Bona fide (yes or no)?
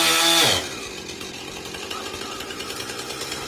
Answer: yes